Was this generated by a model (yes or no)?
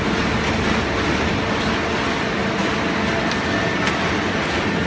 no